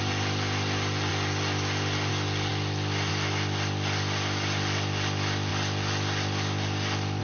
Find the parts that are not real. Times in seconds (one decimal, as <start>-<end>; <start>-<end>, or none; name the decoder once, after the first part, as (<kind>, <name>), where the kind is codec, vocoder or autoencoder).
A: none